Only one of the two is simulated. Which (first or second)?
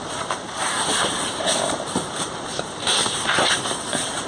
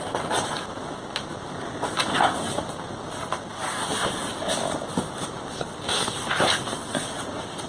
first